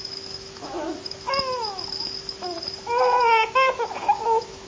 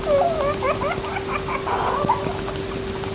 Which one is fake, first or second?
first